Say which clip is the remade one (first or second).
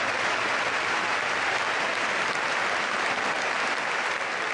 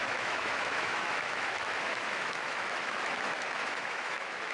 second